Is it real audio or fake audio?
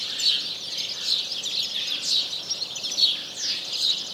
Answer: real